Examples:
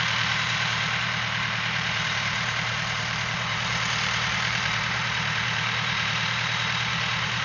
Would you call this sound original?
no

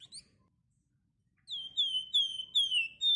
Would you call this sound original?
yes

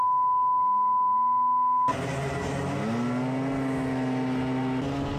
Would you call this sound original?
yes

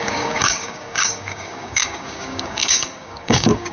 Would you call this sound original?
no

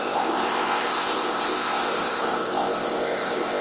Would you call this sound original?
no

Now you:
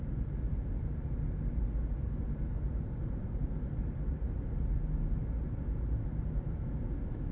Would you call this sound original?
yes